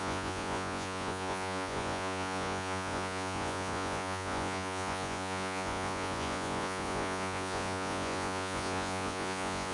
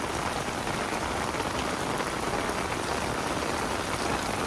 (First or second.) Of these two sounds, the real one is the second